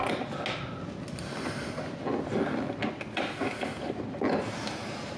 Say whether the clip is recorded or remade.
recorded